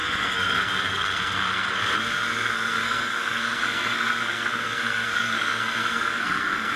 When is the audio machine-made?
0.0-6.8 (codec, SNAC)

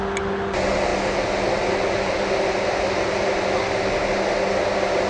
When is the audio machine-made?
none

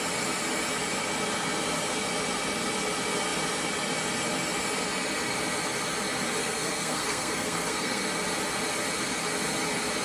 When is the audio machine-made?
6.4-8.0 (codec, SNAC)

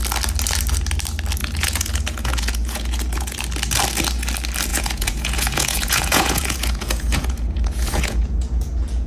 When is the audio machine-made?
1.4-3.4 (vocoder, Vocos); 4.7-9.1

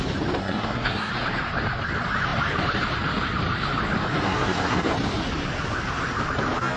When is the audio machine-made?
0.4-1.1 (codec, SNAC); 4.1-4.9